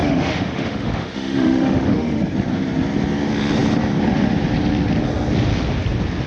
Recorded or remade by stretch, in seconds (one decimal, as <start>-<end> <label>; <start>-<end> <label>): 0.0-2.2 remade; 2.2-6.3 recorded